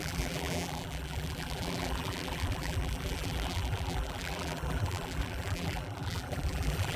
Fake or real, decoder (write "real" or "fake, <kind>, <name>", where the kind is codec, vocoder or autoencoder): fake, vocoder, BigVGAN v2